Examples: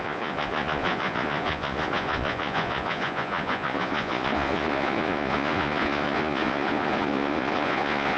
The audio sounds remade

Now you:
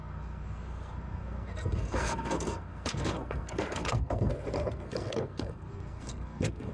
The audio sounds remade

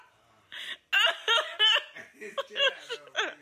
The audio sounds recorded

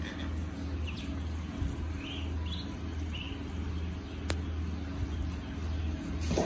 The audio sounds recorded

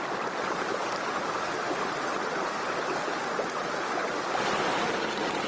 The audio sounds recorded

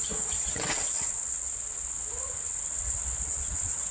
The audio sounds remade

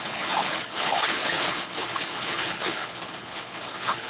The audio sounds remade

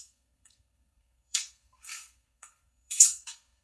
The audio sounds remade